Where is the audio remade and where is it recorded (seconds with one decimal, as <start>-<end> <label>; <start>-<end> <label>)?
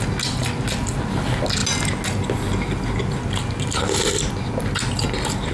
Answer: 0.0-5.5 recorded